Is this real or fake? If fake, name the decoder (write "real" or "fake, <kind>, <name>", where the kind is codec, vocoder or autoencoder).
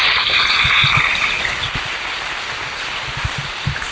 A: real